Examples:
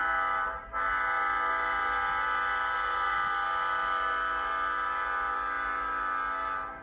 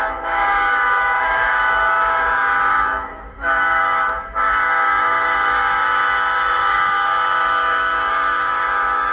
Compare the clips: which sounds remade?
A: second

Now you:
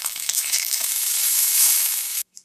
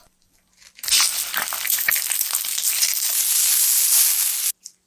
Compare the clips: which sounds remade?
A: first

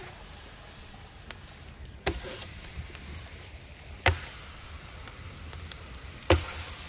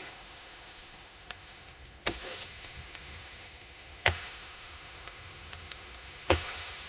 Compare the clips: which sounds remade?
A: second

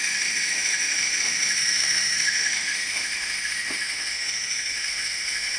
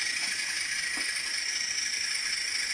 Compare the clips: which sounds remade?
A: first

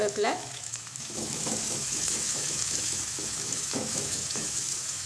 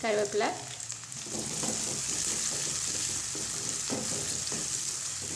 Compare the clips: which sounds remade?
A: first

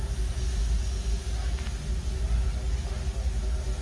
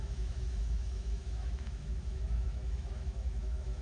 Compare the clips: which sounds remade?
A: second